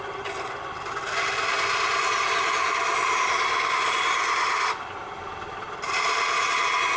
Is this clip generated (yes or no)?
no